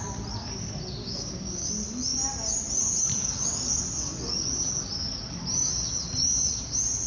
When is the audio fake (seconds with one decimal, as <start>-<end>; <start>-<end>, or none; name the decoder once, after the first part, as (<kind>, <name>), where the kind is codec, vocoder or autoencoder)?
1.0-1.7 (codec, DAC); 3.2-3.8